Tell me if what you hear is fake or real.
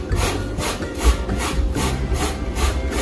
fake